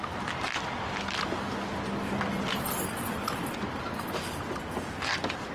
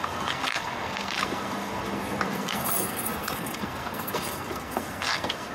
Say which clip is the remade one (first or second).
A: second